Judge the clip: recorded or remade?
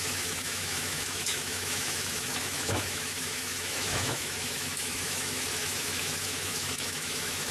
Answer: remade